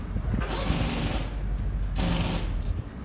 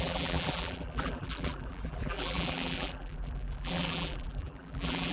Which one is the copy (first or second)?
second